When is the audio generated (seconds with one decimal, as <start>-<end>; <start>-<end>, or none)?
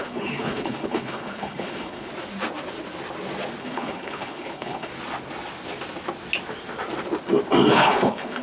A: 0.0-2.1; 3.6-4.9; 7.7-8.4